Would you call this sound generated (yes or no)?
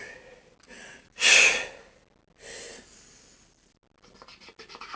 no